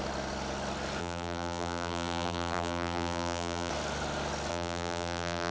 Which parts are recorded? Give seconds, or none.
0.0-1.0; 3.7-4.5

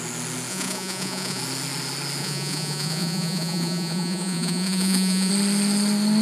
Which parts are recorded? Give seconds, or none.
0.0-0.5; 1.4-2.2; 5.3-6.2